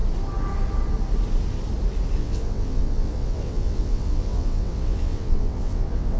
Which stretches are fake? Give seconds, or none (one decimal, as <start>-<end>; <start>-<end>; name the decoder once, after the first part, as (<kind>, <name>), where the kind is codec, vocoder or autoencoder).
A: 2.2-6.2 (vocoder, WaveNeXt)